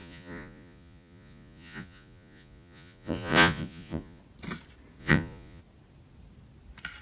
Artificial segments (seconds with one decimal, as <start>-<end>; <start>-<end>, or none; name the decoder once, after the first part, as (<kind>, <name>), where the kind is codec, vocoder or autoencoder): 0.0-4.2 (vocoder, Vocos); 5.0-5.6